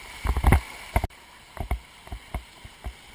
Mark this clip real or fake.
real